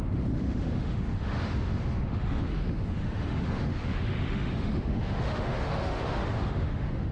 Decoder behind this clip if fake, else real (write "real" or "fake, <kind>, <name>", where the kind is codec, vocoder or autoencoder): fake, autoencoder, DAC-VAE